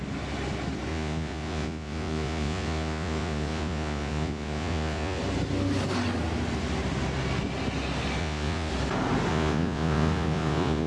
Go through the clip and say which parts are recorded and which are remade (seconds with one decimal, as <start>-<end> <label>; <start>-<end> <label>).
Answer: 0.0-0.9 recorded; 0.9-5.2 remade; 5.2-8.2 recorded; 8.2-8.7 remade; 8.7-9.3 recorded; 9.3-10.9 remade